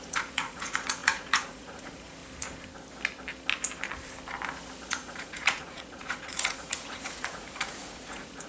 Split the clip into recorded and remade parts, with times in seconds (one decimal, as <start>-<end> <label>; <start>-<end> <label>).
0.0-2.2 remade; 2.2-4.9 recorded; 4.9-8.5 remade